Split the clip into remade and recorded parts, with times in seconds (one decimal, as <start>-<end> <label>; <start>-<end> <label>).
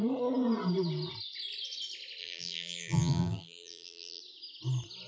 0.0-2.2 recorded; 2.2-4.2 remade; 4.2-5.1 recorded